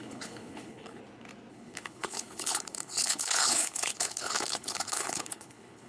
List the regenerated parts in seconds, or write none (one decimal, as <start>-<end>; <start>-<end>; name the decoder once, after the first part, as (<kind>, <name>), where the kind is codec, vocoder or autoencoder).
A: 0.0-1.0 (codec, HILCodec); 1.5-5.9